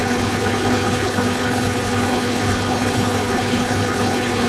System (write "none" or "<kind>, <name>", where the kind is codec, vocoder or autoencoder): codec, HILCodec